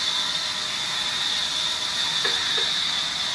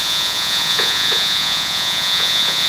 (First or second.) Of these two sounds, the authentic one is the first